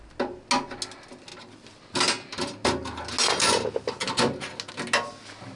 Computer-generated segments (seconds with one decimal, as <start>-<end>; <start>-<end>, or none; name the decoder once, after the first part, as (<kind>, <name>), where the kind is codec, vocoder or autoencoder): none

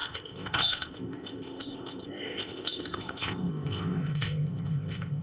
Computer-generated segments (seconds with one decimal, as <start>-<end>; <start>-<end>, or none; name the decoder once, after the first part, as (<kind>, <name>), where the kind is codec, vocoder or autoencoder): 0.0-5.2 (codec, ZipCodec)

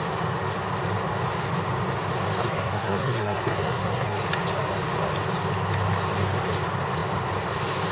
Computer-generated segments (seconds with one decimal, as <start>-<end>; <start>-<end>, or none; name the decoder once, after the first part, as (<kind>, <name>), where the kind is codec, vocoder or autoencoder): 2.4-4.2 (codec, SNAC)

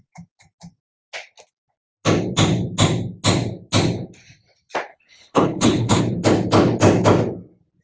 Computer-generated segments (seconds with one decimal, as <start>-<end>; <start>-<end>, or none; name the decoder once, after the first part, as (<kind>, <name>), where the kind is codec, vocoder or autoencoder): 4.9-6.0 (codec, HILCodec)

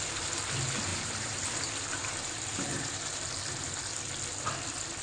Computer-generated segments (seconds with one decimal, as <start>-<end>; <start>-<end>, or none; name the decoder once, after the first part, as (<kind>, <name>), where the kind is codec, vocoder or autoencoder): 0.9-3.0 (vocoder, BigVGAN v2)

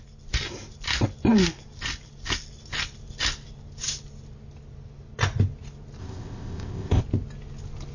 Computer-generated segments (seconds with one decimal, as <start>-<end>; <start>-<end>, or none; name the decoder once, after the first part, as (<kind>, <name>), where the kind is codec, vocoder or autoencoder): 6.0-7.0 (codec, ZipCodec)

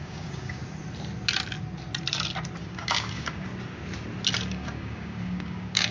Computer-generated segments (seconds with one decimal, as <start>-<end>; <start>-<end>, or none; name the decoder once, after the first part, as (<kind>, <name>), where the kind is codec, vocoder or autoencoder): 0.0-0.6 (codec, DAC); 2.6-3.5; 4.5-5.9

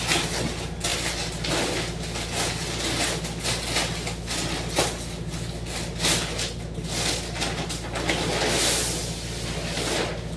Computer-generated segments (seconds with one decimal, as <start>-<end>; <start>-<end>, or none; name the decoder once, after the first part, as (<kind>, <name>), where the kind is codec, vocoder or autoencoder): none